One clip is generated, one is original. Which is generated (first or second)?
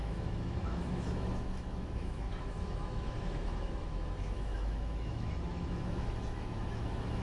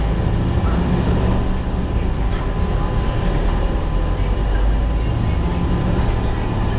first